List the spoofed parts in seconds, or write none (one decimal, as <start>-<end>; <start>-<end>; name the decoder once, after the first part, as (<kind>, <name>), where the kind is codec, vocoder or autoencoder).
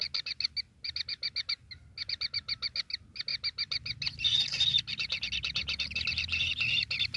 none